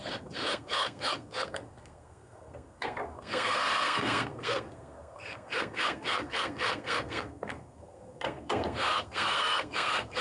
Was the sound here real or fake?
fake